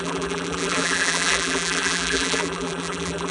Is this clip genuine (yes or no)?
no